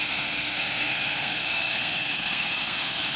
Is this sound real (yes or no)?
no